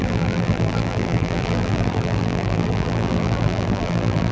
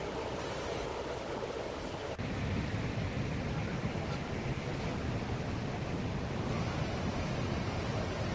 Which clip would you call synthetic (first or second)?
first